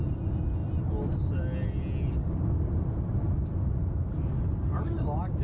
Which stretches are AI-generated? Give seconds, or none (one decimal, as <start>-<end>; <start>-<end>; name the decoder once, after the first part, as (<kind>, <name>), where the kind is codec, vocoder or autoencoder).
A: none